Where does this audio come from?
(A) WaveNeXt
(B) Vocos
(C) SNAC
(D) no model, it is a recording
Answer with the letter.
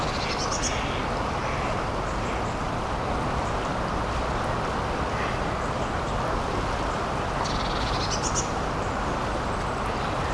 D